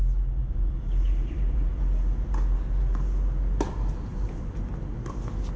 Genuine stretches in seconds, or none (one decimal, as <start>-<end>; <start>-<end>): 0.0-0.4; 1.7-4.1; 4.7-5.6